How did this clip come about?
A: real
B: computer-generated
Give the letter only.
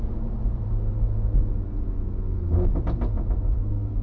B